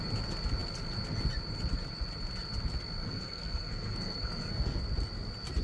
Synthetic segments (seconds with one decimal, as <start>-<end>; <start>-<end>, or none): 3.0-4.8

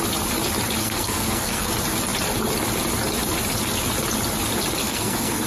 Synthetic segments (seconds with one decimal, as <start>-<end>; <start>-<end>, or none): 0.8-1.7; 4.8-5.5

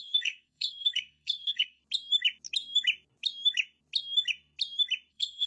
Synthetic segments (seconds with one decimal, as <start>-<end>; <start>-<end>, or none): 0.0-1.8; 5.1-5.5

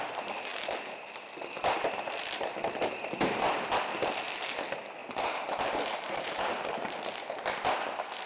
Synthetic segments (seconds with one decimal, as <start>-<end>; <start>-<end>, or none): 0.5-1.3; 5.0-7.1

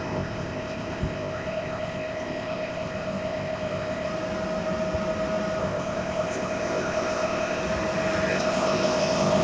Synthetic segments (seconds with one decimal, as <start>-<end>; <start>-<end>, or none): 0.0-4.1; 5.6-7.6; 8.3-9.4

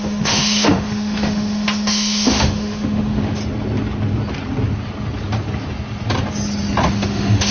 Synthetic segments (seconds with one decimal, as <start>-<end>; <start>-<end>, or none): 0.0-3.4; 6.9-7.5

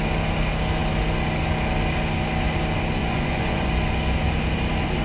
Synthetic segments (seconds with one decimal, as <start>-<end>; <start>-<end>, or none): 3.0-3.7